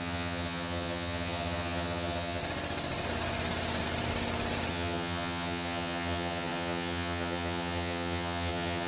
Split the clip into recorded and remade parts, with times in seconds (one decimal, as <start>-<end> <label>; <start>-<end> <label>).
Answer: 0.0-2.4 remade; 2.4-4.7 recorded; 4.7-8.9 remade

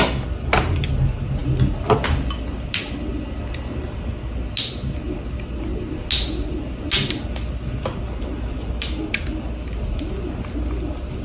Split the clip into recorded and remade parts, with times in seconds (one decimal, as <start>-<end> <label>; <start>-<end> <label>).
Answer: 0.0-11.2 recorded